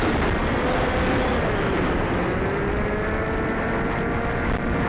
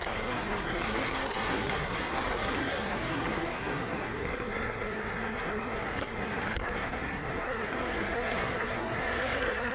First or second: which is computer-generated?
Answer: second